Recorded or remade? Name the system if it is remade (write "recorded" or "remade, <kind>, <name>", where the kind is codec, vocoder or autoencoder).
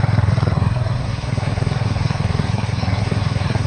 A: remade, codec, SNAC